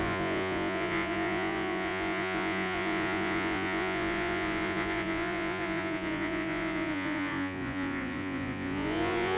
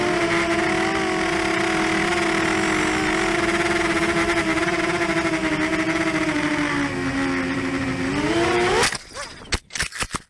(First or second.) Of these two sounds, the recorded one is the second